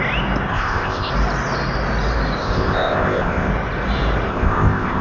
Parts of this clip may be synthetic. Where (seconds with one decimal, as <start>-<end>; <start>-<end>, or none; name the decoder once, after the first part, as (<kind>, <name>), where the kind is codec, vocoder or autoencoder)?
0.5-1.1 (codec, ZipCodec); 2.4-3.5; 4.3-5.0